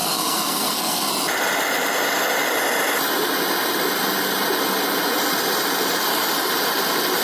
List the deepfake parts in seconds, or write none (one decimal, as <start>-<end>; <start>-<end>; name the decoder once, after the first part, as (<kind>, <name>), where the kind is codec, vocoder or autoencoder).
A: 0.0-1.1 (codec, SNAC)